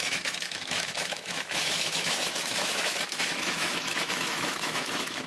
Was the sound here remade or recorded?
remade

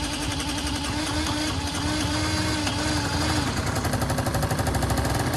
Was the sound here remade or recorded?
recorded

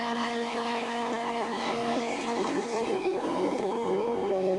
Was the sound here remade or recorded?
remade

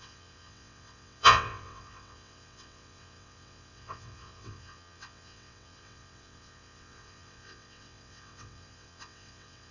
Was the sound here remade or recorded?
remade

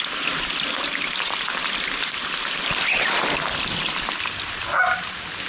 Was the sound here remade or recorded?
recorded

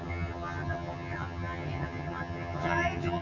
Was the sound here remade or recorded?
remade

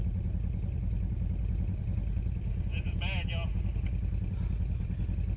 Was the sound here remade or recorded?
recorded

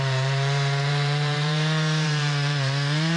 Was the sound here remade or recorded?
remade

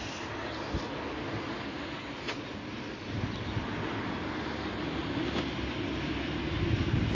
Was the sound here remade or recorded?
recorded